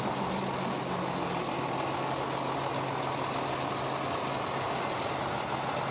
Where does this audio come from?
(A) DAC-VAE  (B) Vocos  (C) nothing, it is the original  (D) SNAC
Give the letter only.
C